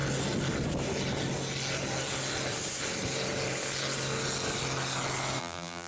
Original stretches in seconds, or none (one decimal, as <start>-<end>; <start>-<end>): 0.0-5.4